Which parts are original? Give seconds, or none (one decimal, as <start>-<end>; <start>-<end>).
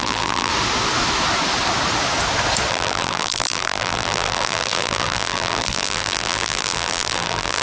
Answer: 0.5-2.7